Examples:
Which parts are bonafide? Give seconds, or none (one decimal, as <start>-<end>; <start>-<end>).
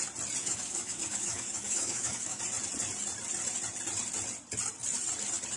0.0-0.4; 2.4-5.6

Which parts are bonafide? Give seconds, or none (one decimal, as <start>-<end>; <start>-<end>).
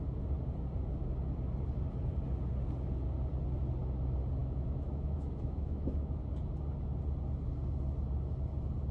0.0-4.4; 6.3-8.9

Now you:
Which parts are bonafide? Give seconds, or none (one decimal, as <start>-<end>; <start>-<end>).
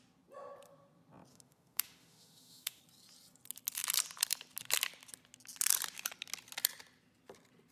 0.0-1.3; 2.8-7.7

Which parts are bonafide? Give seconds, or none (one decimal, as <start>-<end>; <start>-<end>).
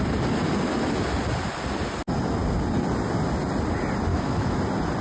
0.0-4.1; 4.6-5.0